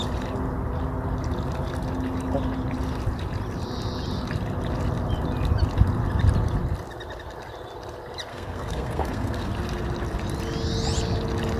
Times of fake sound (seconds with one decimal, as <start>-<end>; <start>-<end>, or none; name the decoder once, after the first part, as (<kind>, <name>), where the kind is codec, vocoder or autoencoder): 8.3-9.5 (codec, SNAC)